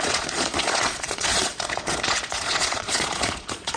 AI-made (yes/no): yes